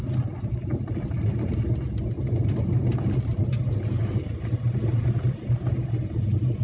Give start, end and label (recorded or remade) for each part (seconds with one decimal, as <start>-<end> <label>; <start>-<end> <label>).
0.0-6.6 recorded